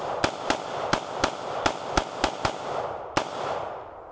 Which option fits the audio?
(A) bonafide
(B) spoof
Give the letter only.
A